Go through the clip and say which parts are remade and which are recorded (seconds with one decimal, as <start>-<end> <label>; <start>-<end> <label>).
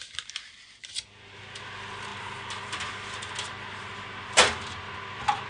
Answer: 0.0-5.5 recorded